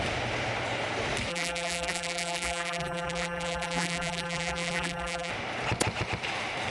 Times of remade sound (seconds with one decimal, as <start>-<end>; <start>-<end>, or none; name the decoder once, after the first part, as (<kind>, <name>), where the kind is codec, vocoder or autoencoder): 1.3-5.3 (vocoder, BigVGAN v2)